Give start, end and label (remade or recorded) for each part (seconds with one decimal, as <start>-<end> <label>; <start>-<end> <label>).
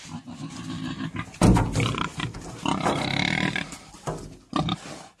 0.0-5.2 recorded